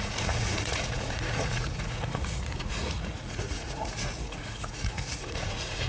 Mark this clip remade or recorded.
remade